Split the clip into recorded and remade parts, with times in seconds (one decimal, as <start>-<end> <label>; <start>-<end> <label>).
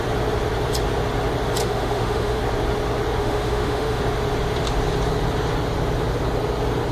0.0-1.6 recorded; 1.6-2.4 remade; 2.4-3.2 recorded; 3.2-4.0 remade; 4.0-6.9 recorded